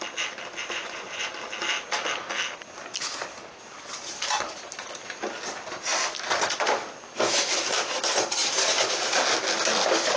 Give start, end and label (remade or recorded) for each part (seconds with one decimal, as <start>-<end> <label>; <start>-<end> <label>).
0.0-0.6 recorded; 0.6-1.3 remade; 1.3-10.2 recorded